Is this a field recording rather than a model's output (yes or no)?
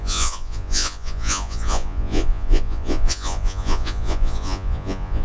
no